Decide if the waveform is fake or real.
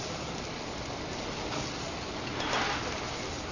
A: real